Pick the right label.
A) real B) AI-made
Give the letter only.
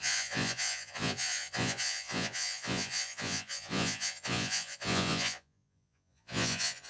B